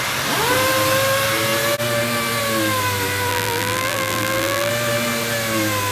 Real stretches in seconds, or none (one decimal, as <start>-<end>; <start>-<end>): 0.0-3.3; 4.7-5.9